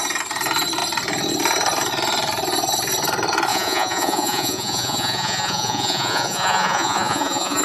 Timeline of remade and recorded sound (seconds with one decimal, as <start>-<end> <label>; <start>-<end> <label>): 0.0-3.5 recorded; 3.5-7.6 remade